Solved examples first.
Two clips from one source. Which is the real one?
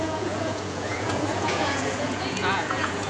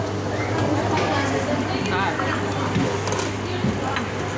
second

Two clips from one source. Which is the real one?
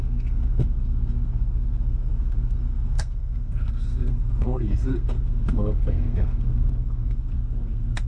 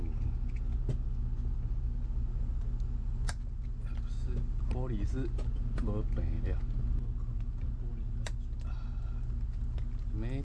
second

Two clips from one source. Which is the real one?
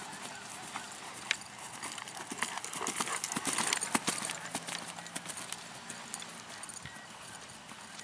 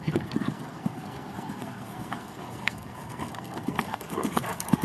first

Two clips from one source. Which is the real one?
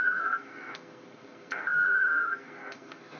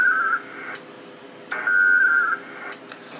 second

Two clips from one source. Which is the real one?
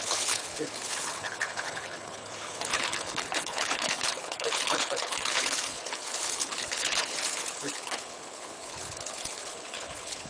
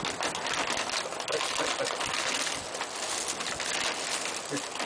second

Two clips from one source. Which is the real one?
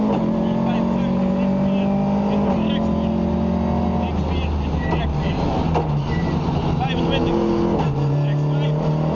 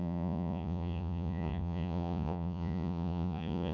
first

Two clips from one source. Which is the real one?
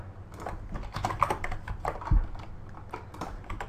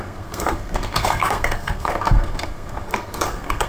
first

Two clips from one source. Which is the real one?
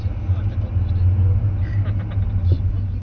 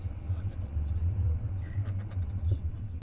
first